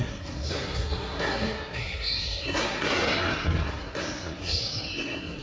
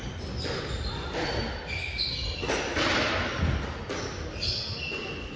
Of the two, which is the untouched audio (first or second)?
second